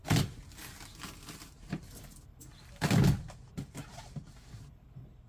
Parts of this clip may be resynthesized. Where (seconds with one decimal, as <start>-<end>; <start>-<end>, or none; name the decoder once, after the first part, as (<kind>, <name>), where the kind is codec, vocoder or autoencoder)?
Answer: none